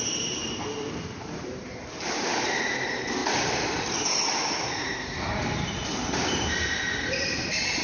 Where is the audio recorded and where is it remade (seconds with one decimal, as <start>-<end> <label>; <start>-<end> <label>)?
0.0-0.4 remade; 0.4-0.9 recorded; 0.9-3.2 remade; 3.2-5.5 recorded; 5.5-7.8 remade